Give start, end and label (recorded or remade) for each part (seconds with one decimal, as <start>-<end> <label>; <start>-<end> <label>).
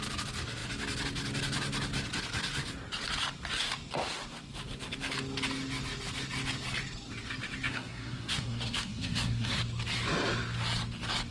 0.0-7.7 recorded; 7.7-9.6 remade; 9.6-11.3 recorded